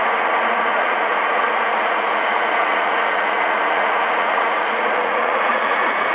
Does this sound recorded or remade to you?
remade